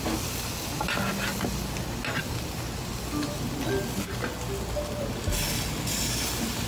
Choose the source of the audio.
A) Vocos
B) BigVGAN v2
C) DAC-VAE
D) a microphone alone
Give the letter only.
D